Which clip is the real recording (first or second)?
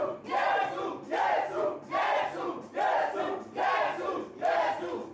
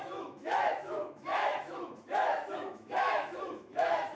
first